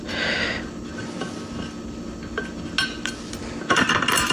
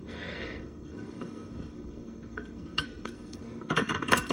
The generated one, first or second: second